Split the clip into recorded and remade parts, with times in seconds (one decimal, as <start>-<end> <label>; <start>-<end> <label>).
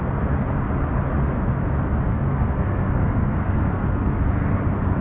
0.0-2.1 recorded; 2.1-4.2 remade; 4.2-5.0 recorded